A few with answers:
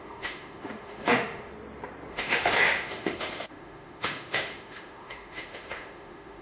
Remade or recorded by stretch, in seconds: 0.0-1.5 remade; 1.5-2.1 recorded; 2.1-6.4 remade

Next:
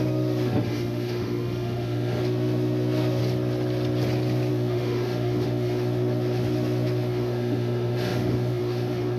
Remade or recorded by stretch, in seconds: 0.0-3.2 remade; 3.2-4.5 recorded; 4.5-9.2 remade

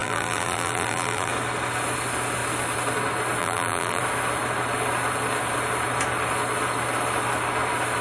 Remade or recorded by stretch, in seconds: 0.0-1.3 remade; 1.3-3.4 recorded; 3.4-4.0 remade; 4.0-8.0 recorded

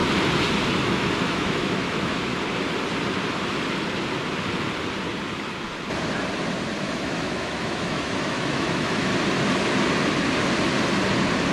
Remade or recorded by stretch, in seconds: 0.0-0.8 recorded; 0.8-2.3 remade; 2.3-6.8 recorded; 6.8-9.1 remade; 9.1-11.5 recorded